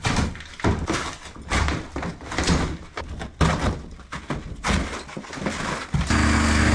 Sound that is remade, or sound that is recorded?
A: recorded